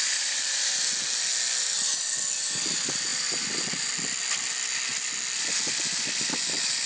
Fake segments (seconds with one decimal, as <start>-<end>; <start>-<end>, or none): none